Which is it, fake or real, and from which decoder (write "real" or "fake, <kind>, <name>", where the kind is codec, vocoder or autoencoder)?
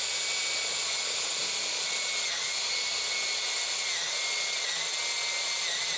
real